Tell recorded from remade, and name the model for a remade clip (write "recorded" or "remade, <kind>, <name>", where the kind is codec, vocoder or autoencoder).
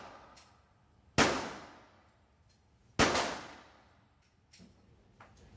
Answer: recorded